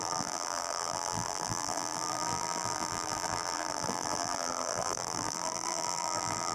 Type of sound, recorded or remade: remade